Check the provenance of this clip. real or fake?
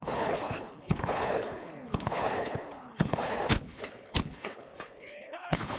fake